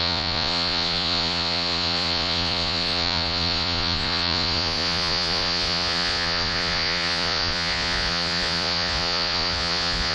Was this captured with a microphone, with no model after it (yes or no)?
no